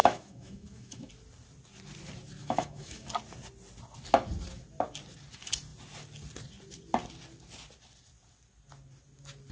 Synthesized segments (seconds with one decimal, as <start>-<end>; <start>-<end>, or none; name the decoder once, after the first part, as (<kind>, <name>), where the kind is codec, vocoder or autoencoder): 0.0-1.1 (autoencoder, DAC-VAE); 2.4-3.1